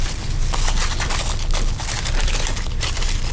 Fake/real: real